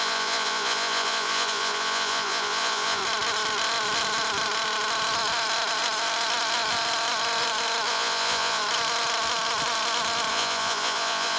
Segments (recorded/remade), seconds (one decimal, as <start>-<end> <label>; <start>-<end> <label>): 0.0-3.0 remade; 3.0-7.9 recorded; 7.9-8.6 remade; 8.6-10.3 recorded; 10.3-11.4 remade